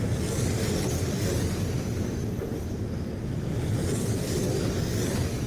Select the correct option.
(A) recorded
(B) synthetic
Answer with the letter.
A